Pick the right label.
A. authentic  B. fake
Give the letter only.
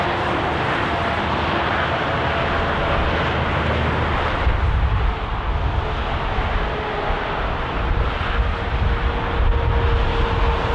A